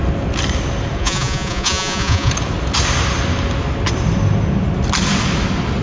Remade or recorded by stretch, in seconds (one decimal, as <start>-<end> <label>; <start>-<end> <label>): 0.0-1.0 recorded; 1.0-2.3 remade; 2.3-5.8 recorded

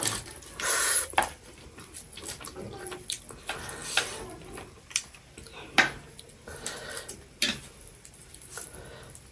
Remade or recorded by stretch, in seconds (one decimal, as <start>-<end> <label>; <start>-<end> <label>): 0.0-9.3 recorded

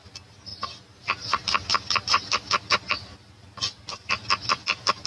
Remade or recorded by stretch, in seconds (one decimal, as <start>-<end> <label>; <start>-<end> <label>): 0.0-5.1 recorded

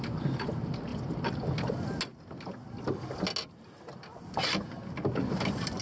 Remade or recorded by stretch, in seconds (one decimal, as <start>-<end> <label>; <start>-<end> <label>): 0.0-5.8 recorded

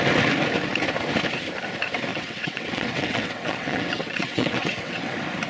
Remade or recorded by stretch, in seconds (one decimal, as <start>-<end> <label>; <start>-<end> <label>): 0.0-2.1 recorded; 2.1-5.1 remade; 5.1-5.5 recorded

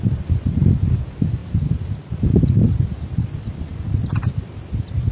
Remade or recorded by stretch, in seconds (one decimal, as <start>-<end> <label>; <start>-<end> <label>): 0.0-1.4 recorded; 1.4-2.1 remade; 2.1-5.1 recorded

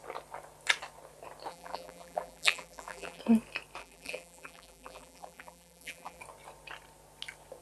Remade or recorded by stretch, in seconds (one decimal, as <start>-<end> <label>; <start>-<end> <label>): 0.0-1.5 recorded; 1.5-3.2 remade; 3.2-3.8 recorded; 3.8-6.2 remade; 6.2-7.6 recorded

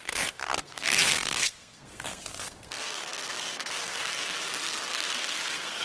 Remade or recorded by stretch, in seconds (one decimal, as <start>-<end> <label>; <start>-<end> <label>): 0.0-5.8 remade